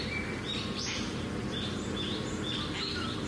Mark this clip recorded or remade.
recorded